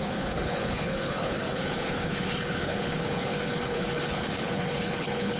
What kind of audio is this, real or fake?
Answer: fake